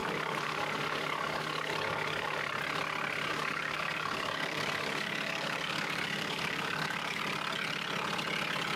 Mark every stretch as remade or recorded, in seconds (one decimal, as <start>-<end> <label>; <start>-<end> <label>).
0.0-2.4 remade; 2.4-3.3 recorded; 3.3-7.2 remade; 7.2-8.8 recorded